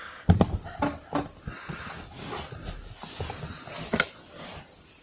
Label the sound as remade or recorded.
recorded